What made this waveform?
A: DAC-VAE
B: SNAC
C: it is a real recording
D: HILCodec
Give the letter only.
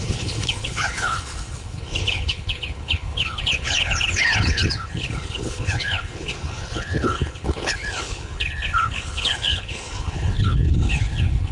D